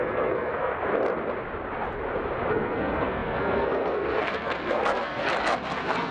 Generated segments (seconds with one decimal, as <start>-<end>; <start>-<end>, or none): 0.0-0.7; 2.5-6.1

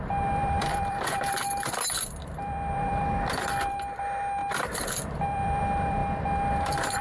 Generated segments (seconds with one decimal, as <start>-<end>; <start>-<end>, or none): 0.0-6.0; 6.5-7.0

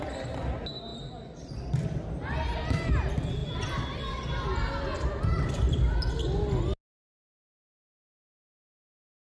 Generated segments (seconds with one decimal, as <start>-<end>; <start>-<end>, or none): none